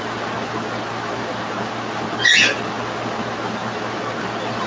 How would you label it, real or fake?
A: real